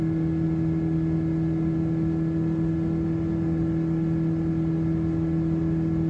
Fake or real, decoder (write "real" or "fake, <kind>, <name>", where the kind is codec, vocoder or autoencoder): real